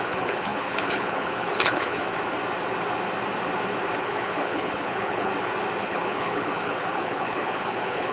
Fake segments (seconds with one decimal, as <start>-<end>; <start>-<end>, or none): 0.0-2.0; 4.0-5.3; 5.8-8.1